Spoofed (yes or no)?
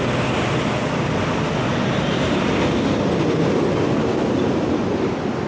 no